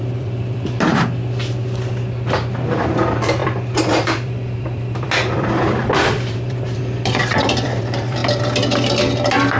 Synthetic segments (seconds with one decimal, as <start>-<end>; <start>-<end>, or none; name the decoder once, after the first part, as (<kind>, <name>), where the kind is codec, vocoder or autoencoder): 0.0-0.9 (vocoder, BigVGAN v2); 2.6-8.2